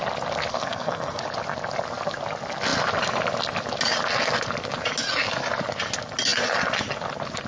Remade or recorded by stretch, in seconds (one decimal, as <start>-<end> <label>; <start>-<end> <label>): 0.0-0.5 recorded; 0.5-1.2 remade; 1.2-7.5 recorded